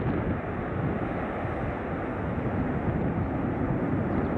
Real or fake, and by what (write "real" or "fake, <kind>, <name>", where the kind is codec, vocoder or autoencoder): real